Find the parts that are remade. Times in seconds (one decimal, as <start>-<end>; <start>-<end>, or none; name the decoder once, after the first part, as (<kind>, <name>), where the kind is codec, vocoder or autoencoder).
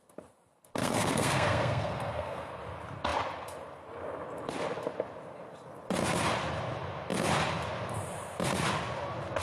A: 0.8-2.6 (codec, SNAC)